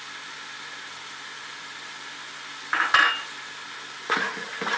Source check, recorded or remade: recorded